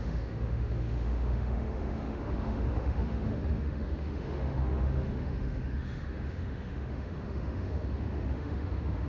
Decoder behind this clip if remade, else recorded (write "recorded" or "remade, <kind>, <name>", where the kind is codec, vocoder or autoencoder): remade, autoencoder, DAC-VAE